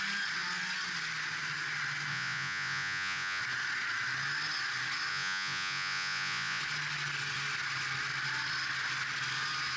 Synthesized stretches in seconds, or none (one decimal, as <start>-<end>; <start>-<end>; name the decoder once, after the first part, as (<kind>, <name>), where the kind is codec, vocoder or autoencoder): 2.1-3.4 (vocoder, Vocos); 5.1-6.6